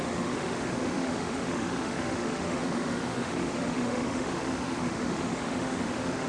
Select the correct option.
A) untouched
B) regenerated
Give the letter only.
B